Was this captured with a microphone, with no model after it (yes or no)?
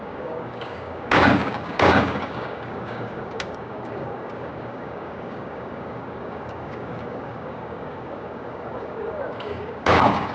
no